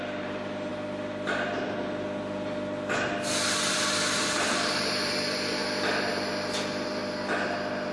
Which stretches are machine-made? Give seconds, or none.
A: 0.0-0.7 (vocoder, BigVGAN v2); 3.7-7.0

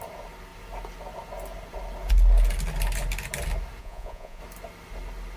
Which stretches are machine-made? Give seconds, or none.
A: 3.8-4.4 (vocoder, Vocos)

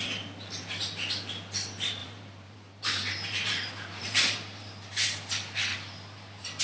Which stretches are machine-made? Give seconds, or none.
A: 2.0-4.8 (vocoder, BigVGAN v2); 5.7-6.6

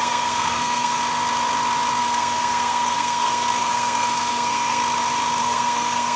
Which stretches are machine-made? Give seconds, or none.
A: 0.0-1.0 (codec, SNAC); 2.0-4.8; 5.4-6.2

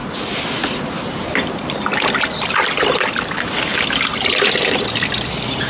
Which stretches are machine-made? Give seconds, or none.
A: none

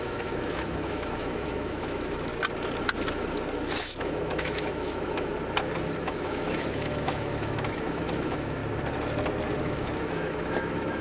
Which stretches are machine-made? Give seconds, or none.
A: 0.0-2.3 (autoencoder, DAC-VAE); 3.8-5.3; 6.0-8.6; 9.6-11.0

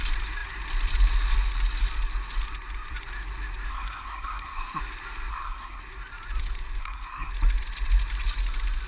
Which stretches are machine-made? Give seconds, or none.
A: 3.7-4.8 (codec, SNAC); 5.3-5.8; 6.8-7.3